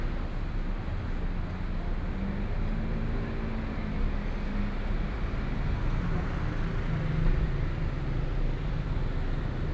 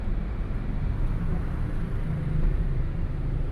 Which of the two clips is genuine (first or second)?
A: first